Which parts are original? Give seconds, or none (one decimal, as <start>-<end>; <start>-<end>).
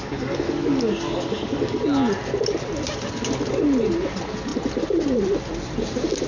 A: 1.8-6.3